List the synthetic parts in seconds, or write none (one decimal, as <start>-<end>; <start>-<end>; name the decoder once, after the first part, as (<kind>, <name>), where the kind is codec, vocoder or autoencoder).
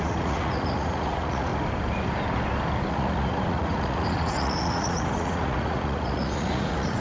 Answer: 0.0-1.5 (vocoder, Vocos); 2.9-7.0